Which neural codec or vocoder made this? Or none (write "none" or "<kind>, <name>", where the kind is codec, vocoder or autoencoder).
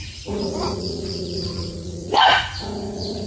vocoder, Vocos